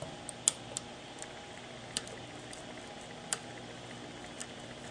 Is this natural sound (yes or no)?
yes